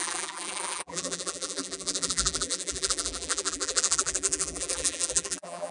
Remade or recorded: remade